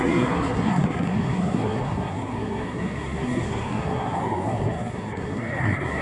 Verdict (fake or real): fake